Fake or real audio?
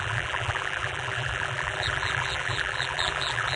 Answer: fake